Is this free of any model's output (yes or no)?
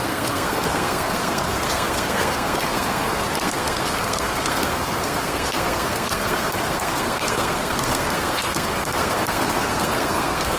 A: no